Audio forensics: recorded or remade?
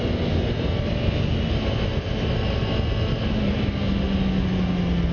recorded